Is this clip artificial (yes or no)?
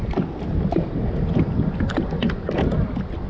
no